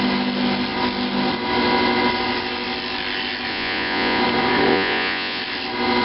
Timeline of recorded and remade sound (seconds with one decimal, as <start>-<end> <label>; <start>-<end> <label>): 0.0-3.5 recorded; 3.5-4.2 remade; 4.2-4.7 recorded; 4.7-5.4 remade; 5.4-6.0 recorded